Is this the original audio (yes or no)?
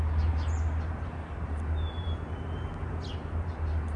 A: yes